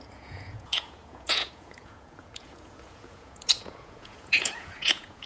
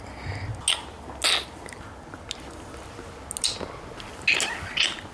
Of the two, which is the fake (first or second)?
first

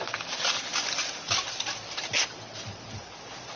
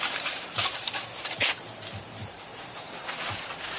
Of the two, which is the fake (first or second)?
second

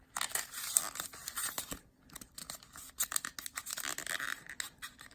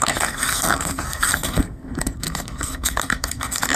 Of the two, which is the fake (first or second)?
second